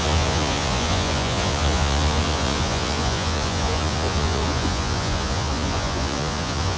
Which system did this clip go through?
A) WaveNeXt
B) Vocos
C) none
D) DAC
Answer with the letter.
B